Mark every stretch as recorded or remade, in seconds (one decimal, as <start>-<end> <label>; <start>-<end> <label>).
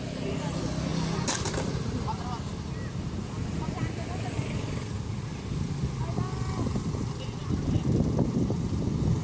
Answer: 0.0-9.2 recorded